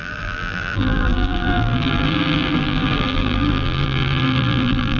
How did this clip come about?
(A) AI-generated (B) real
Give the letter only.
A